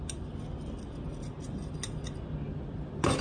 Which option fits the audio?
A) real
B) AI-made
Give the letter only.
A